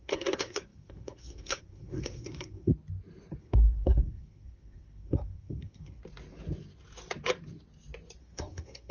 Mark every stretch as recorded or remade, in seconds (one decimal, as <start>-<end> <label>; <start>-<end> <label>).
0.0-2.7 remade; 2.7-3.4 recorded; 3.4-6.0 remade; 6.0-8.2 recorded; 8.2-8.9 remade